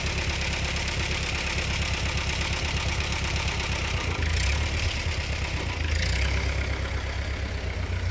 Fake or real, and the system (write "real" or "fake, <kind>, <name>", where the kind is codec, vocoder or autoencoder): real